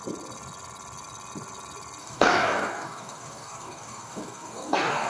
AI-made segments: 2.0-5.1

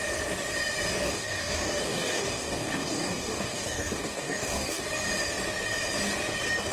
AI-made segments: 1.0-4.8

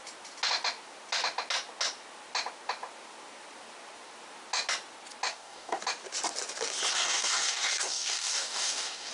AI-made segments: 5.3-5.8; 6.9-9.1